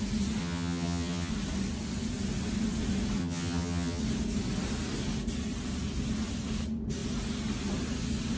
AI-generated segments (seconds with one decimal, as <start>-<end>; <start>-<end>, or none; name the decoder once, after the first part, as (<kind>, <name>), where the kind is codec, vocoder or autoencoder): 0.4-1.3 (vocoder, HiFi-GAN); 3.2-4.0